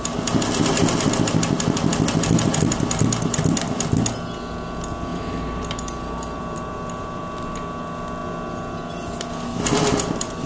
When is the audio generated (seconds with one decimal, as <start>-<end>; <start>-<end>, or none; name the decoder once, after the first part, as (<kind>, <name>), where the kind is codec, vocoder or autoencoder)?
5.1-7.2 (vocoder, BigVGAN v2)